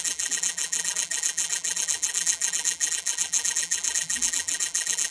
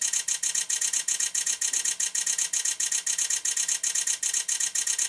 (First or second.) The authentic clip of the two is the second